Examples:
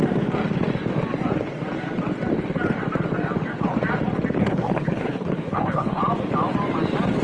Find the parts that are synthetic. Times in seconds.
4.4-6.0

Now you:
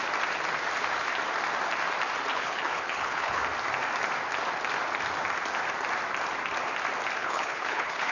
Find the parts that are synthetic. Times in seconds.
2.3-3.4; 7.2-8.1

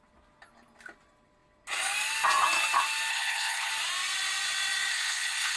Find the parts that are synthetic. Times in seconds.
3.1-3.7; 4.9-5.6

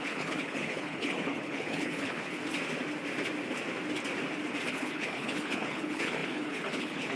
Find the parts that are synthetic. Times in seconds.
0.0-2.4; 4.7-7.2

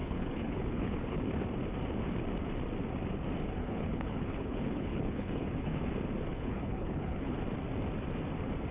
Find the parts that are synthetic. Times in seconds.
0.0-1.3; 3.6-5.8; 6.3-7.3